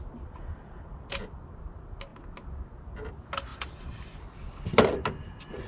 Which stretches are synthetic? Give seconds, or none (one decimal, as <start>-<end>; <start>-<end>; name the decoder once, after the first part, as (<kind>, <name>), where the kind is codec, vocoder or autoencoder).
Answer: 3.5-4.2 (vocoder, BigVGAN v2)